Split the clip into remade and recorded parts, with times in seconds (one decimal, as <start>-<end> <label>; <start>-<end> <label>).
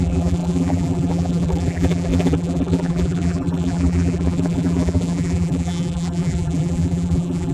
0.0-7.5 remade